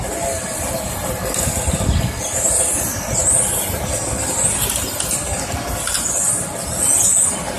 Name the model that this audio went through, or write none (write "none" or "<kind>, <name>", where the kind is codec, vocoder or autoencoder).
none